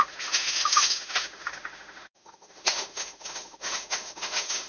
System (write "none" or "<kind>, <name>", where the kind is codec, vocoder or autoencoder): autoencoder, DAC-VAE